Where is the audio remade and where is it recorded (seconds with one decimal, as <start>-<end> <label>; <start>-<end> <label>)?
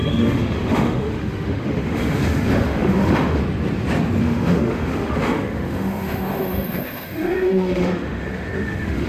0.0-3.4 remade; 3.4-4.2 recorded; 4.2-9.1 remade